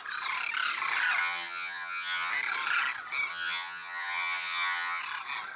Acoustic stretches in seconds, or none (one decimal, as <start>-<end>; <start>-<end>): 0.0-1.2; 2.3-3.3; 5.0-5.6